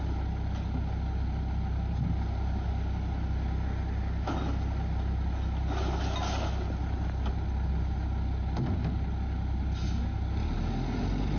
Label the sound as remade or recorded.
recorded